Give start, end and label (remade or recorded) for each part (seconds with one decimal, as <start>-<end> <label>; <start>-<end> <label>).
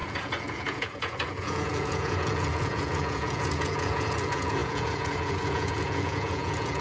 0.0-6.8 remade